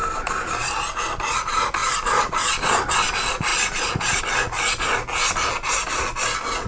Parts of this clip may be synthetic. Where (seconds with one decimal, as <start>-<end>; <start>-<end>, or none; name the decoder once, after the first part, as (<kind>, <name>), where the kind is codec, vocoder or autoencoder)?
0.0-0.7 (vocoder, BigVGAN v2); 1.8-2.9; 3.5-4.2